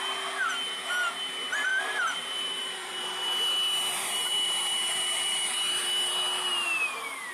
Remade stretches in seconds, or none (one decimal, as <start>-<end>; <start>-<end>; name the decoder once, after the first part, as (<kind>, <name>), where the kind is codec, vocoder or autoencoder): 1.7-6.1 (vocoder, BigVGAN v2)